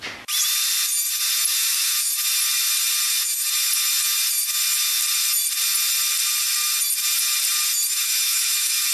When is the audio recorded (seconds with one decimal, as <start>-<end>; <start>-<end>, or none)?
0.0-1.5; 2.1-7.9